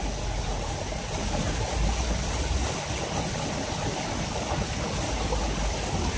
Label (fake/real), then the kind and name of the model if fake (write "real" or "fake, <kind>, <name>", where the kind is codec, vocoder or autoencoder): real